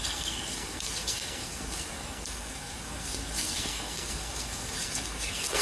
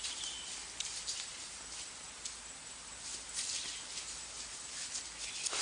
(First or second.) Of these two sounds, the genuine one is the second